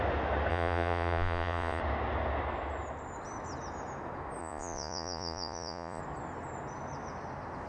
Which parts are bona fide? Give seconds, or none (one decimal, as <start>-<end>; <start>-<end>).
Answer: 0.0-0.5; 1.8-4.4; 6.0-7.7